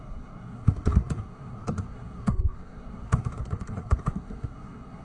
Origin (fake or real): fake